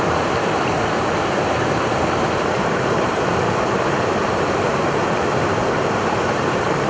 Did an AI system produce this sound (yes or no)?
yes